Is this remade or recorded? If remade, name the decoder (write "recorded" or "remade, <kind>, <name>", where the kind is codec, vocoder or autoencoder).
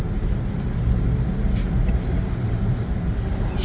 recorded